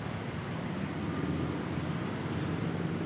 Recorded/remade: recorded